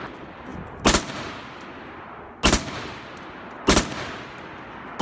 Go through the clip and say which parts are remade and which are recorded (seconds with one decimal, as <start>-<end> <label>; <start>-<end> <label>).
0.0-5.0 recorded